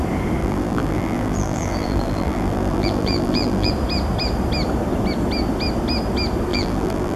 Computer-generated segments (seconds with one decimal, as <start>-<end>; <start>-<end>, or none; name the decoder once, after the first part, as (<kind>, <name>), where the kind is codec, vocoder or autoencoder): 0.4-3.7 (vocoder, BigVGAN v2); 6.5-7.2